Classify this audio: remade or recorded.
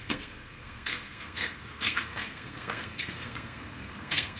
remade